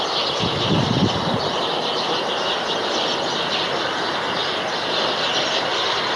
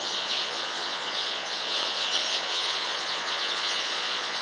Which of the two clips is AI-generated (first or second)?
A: second